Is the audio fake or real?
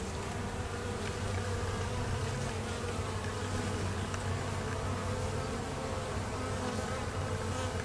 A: real